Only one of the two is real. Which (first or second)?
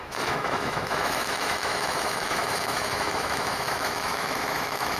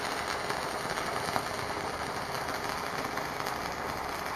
second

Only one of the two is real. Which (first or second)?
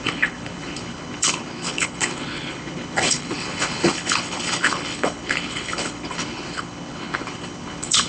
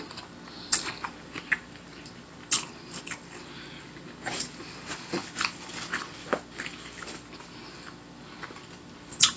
second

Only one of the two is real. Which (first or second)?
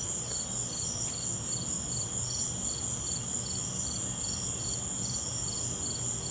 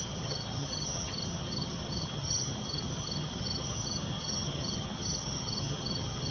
first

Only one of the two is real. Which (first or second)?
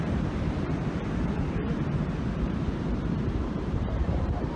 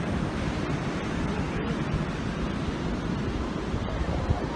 second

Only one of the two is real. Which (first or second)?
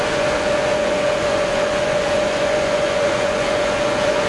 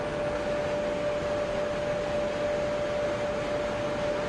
second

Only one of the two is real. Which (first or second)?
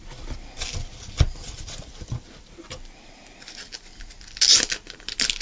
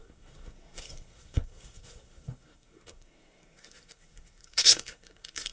first